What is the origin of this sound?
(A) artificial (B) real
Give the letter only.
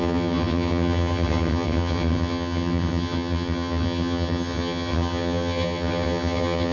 A